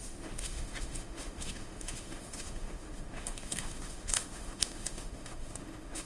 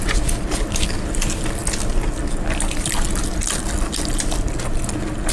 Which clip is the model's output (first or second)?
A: first